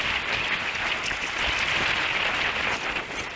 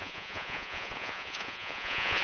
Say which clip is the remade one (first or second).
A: second